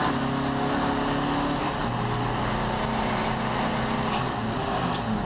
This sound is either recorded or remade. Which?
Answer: recorded